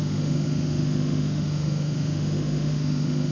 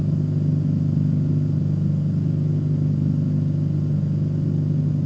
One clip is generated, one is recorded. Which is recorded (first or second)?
second